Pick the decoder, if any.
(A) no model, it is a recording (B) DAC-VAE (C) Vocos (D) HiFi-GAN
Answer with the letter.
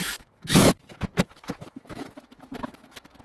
B